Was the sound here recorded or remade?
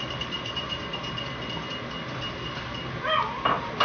recorded